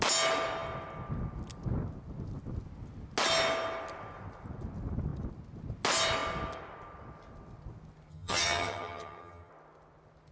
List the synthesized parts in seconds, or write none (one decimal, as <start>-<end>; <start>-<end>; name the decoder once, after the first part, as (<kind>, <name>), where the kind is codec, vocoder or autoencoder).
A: 8.1-9.5 (vocoder, HiFi-GAN)